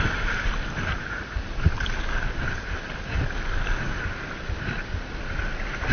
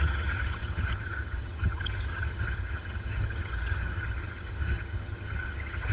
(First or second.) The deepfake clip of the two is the second